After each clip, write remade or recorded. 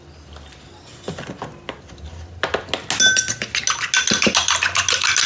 recorded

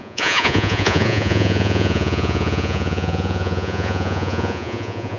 remade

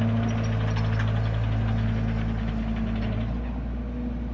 recorded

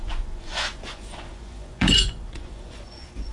remade